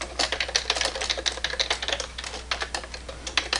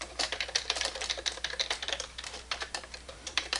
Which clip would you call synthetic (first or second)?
second